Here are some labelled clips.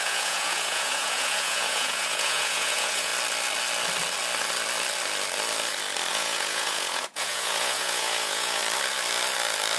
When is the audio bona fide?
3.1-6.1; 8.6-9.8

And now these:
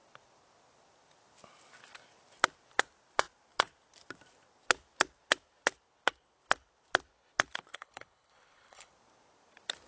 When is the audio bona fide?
0.0-7.7; 8.9-9.9

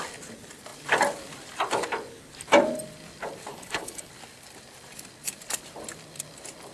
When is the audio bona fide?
0.0-3.5; 4.1-6.7

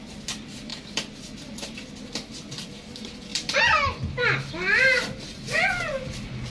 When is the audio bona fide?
0.0-6.5